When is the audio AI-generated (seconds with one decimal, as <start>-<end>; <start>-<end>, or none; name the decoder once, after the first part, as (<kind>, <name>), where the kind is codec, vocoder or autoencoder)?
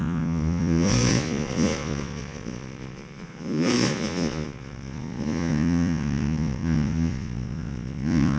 0.0-8.4 (vocoder, Vocos)